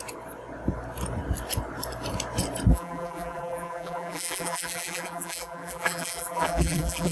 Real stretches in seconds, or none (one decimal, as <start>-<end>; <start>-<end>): 0.0-2.7